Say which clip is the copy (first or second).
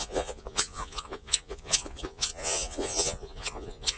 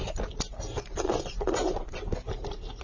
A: first